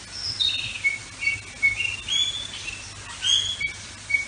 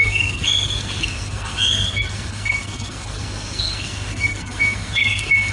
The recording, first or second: first